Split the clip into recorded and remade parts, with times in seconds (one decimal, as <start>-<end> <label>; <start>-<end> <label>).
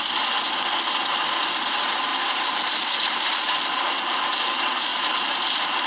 0.0-2.1 recorded; 2.1-4.5 remade; 4.5-4.9 recorded; 4.9-5.9 remade